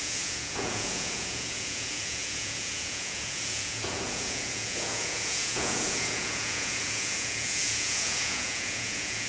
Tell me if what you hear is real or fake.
fake